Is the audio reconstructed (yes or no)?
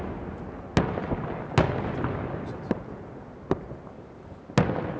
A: no